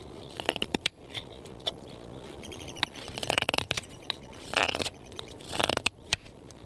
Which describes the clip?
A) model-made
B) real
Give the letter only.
A